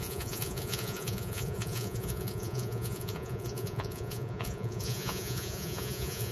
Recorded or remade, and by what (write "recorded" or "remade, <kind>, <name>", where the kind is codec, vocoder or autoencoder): remade, vocoder, Vocos